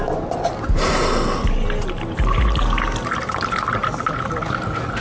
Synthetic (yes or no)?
no